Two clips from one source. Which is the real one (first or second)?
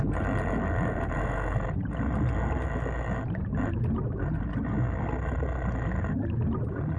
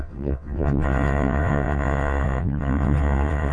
first